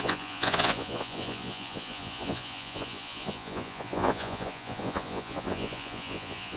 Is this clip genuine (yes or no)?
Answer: no